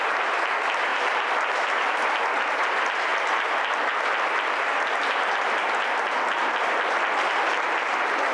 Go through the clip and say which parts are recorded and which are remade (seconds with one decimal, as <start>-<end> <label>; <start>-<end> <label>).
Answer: 0.0-0.9 recorded; 0.9-1.5 remade; 1.5-3.1 recorded; 3.1-5.5 remade; 5.5-8.3 recorded

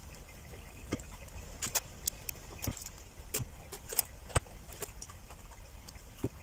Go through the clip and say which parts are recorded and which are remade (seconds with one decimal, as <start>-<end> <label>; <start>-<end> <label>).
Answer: 0.0-6.4 recorded